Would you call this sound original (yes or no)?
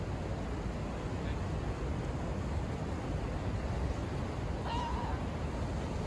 yes